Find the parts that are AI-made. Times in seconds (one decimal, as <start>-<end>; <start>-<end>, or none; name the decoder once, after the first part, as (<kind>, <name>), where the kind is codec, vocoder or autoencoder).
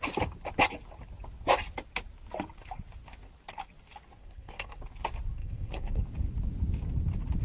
4.2-4.8 (codec, SNAC); 5.4-6.0